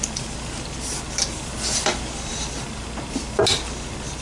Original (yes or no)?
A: yes